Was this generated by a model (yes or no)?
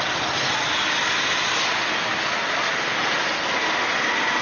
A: no